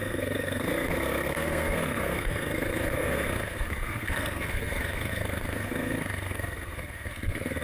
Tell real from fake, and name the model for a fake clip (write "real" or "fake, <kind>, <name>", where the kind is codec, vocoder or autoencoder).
fake, codec, SNAC